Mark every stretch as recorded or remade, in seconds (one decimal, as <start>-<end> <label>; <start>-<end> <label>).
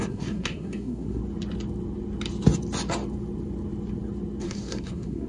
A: 0.0-1.2 remade; 1.2-4.4 recorded; 4.4-5.3 remade